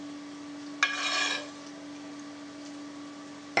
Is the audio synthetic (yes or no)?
no